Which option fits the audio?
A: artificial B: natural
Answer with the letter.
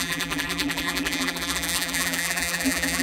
A